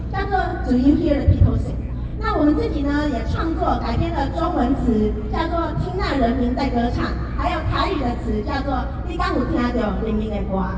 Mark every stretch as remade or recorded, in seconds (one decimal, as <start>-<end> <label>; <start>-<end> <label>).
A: 0.0-0.5 recorded; 0.5-1.7 remade; 1.7-7.2 recorded; 7.2-9.2 remade; 9.2-10.8 recorded